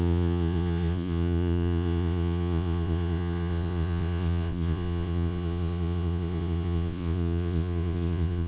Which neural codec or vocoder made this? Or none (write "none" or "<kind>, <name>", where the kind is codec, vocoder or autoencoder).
vocoder, Vocos